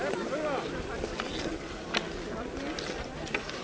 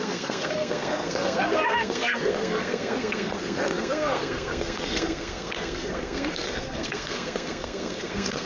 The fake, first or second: second